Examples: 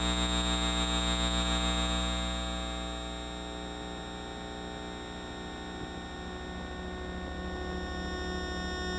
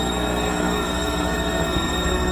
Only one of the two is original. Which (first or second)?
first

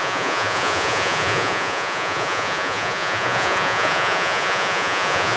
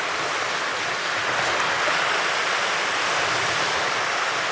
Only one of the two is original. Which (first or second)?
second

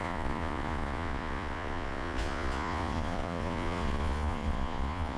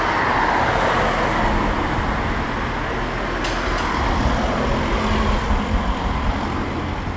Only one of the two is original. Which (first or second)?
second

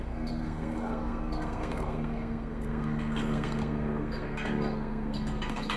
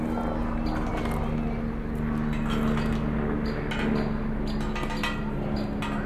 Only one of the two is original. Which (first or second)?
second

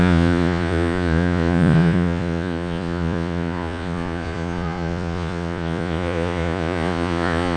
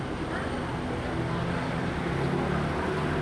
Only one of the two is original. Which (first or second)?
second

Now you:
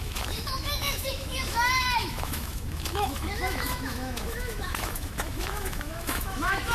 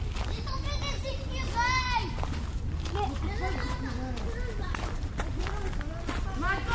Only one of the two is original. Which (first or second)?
second